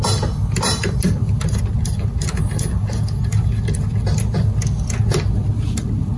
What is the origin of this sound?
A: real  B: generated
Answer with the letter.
A